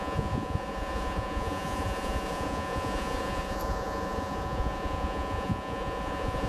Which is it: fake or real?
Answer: fake